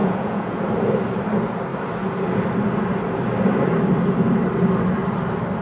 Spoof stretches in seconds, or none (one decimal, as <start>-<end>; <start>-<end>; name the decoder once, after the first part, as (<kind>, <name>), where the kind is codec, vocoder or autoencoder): 0.0-0.6 (vocoder, Vocos)